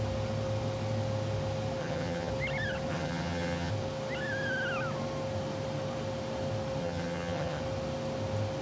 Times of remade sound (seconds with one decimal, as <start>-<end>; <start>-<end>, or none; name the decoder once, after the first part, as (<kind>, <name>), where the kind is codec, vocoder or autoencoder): 1.8-2.3 (vocoder, HiFi-GAN); 2.9-3.7; 6.8-7.6

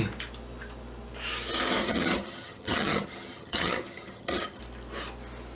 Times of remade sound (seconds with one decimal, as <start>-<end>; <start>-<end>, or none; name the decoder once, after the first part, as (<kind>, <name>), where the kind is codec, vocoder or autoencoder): 1.8-4.6 (vocoder, HiFi-GAN)

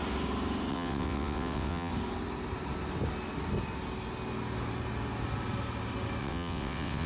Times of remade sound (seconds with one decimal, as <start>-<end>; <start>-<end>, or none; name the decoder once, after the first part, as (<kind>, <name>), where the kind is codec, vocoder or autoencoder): 0.7-1.9 (vocoder, WaveNeXt); 6.2-7.1

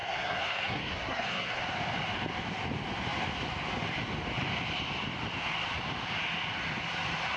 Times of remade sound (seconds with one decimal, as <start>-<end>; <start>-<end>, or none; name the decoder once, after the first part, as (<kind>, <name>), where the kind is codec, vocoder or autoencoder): 0.0-1.6 (codec, SNAC)